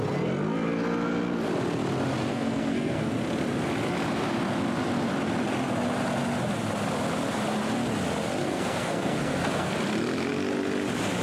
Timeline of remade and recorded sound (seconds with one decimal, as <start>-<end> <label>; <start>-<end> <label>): 0.0-2.3 recorded; 2.3-3.1 remade; 3.1-8.4 recorded; 8.4-9.7 remade; 9.7-11.2 recorded